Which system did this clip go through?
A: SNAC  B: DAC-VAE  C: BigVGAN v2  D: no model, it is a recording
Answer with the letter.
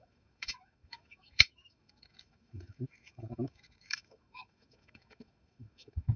B